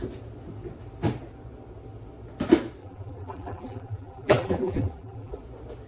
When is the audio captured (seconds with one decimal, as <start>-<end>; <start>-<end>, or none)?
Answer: 0.0-2.8; 5.4-5.9